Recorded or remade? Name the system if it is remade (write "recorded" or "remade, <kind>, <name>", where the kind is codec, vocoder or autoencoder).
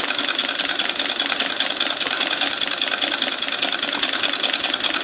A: recorded